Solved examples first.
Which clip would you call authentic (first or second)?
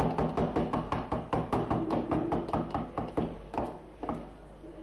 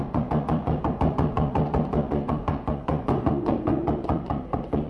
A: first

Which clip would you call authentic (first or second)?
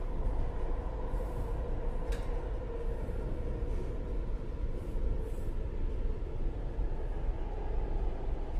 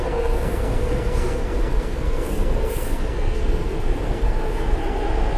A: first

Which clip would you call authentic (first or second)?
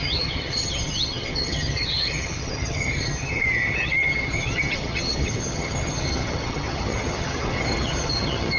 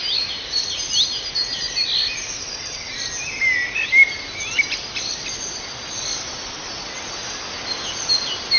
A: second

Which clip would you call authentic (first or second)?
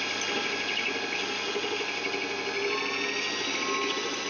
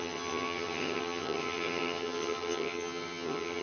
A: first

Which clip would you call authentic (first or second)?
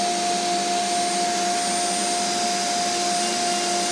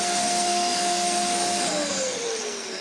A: first